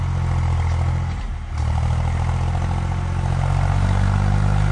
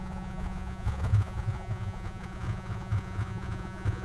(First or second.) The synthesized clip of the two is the second